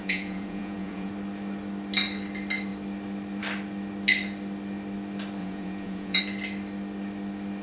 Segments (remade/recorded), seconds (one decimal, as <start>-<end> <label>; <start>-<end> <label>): 0.0-1.1 remade; 1.1-5.4 recorded; 5.4-6.2 remade; 6.2-7.6 recorded